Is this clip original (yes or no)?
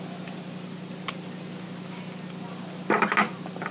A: yes